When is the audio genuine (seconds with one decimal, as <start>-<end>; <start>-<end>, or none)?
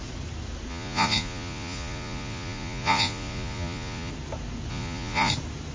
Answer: 0.0-0.7; 4.1-4.7; 5.3-5.7